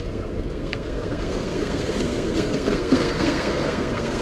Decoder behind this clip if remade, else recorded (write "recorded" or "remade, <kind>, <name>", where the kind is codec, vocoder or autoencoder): remade, codec, SNAC